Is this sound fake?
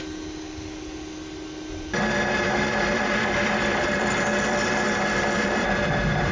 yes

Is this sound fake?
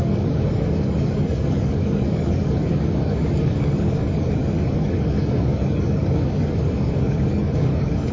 yes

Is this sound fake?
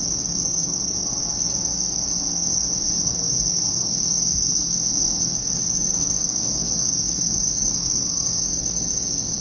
yes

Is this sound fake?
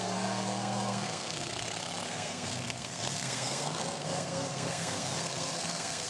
yes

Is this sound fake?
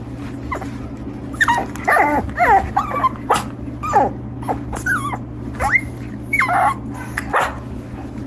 no